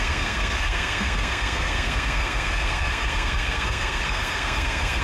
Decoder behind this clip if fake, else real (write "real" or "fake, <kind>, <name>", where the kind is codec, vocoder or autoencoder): fake, codec, SNAC